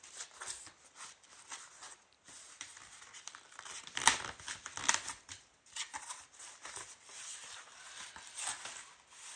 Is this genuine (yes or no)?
yes